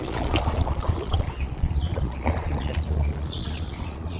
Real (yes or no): no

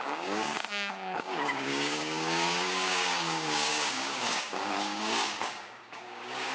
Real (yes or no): no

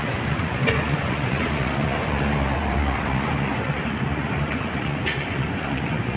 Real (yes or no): no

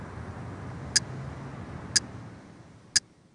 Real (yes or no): yes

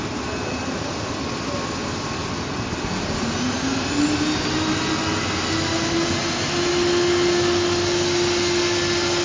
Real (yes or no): yes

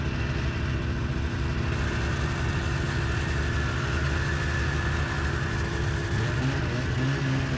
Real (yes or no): yes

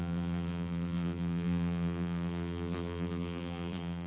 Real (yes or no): no